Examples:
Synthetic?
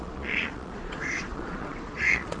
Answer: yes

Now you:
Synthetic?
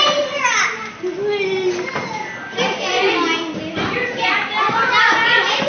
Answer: no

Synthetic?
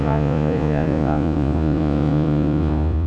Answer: yes